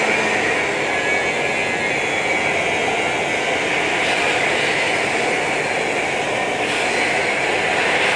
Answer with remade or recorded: recorded